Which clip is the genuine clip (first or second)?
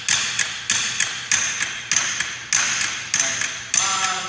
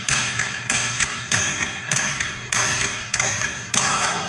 first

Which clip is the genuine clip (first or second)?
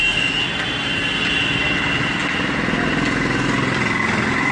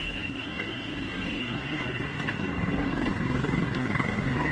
first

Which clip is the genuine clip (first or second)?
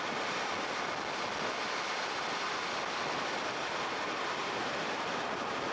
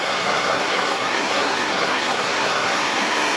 first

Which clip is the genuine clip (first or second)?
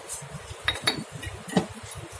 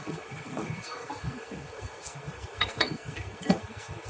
first